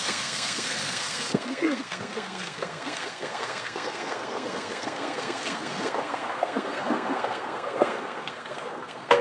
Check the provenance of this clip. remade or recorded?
remade